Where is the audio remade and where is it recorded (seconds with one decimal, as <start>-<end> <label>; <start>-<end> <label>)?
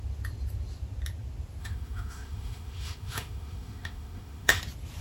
0.0-1.6 recorded; 1.6-4.6 remade; 4.6-5.0 recorded